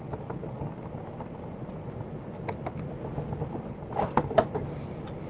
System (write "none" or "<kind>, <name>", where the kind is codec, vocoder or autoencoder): none